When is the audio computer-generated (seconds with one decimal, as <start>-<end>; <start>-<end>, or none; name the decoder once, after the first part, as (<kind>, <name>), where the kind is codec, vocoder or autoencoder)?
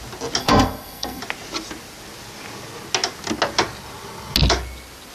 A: 0.4-1.2 (codec, SNAC)